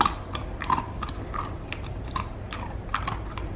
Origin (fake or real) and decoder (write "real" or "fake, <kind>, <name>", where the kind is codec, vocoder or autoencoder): fake, vocoder, BigVGAN v2